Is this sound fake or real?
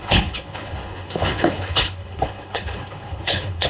fake